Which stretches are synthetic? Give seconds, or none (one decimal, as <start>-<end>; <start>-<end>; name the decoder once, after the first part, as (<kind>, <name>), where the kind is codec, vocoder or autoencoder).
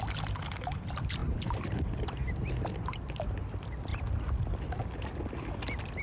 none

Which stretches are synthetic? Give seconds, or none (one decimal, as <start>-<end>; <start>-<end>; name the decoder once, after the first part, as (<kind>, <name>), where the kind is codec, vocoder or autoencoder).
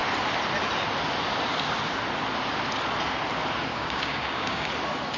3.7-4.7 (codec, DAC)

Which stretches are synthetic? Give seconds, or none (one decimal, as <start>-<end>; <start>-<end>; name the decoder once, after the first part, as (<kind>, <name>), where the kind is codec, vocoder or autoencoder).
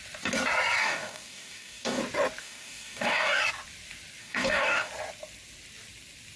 0.8-2.0 (codec, DAC); 2.4-3.4; 4.2-4.9